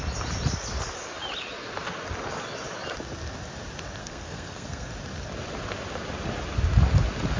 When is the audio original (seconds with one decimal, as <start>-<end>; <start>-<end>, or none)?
0.0-4.0; 4.9-7.4